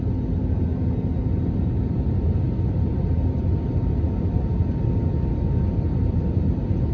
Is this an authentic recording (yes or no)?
yes